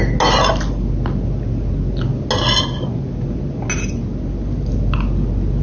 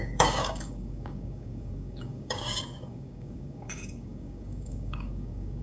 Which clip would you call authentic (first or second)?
first